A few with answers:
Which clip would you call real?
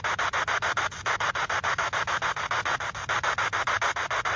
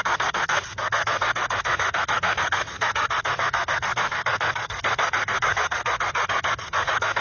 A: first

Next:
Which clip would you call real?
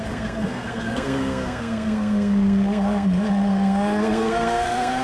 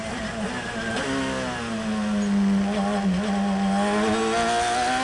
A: second